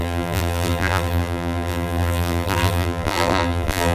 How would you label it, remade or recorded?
remade